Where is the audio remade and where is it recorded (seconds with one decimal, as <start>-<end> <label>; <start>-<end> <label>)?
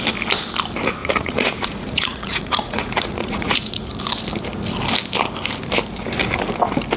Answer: 0.0-1.0 recorded; 1.0-3.9 remade; 3.9-7.0 recorded